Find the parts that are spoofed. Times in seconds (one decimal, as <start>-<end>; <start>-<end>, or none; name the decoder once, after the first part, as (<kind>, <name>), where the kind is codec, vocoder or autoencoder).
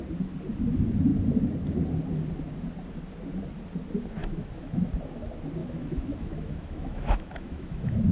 4.2-4.9 (autoencoder, DAC-VAE); 5.6-8.1